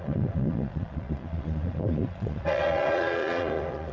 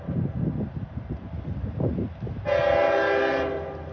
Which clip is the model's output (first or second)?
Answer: first